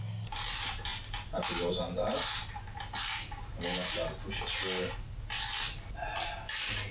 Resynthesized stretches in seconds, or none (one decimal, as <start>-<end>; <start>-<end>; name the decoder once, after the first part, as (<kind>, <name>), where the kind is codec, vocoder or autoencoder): none